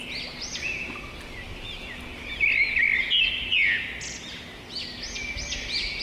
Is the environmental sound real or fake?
real